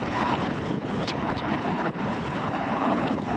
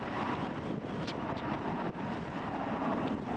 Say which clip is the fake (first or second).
first